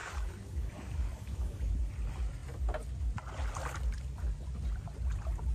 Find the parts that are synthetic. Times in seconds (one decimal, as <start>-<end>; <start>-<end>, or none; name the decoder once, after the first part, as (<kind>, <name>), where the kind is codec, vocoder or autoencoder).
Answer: 0.0-1.7 (codec, DAC)